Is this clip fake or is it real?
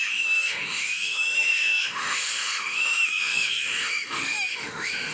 fake